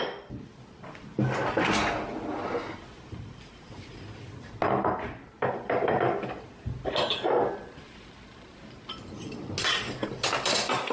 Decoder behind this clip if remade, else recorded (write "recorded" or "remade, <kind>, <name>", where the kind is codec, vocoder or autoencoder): recorded